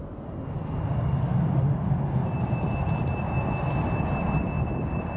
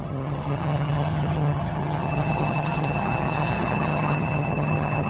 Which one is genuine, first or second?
first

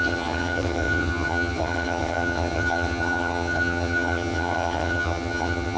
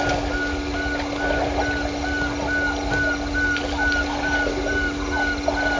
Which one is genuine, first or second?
second